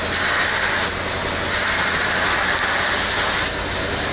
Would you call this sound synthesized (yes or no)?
no